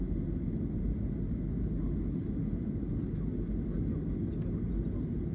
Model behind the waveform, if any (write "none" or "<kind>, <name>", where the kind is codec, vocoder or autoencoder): none